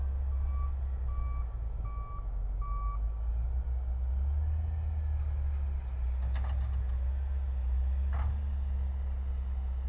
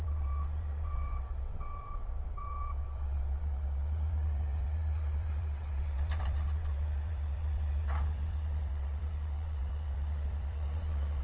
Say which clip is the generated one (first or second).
second